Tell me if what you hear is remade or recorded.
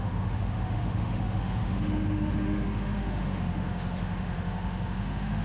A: remade